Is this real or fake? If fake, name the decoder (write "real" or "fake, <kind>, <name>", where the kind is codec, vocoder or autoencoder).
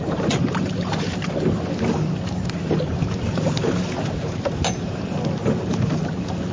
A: real